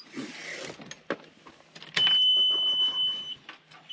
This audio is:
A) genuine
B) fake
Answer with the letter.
A